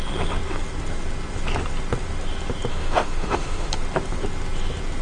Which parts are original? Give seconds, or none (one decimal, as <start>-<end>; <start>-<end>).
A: 0.0-2.7; 3.7-5.0